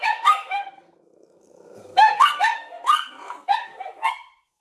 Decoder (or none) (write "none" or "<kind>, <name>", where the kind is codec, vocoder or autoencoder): codec, SNAC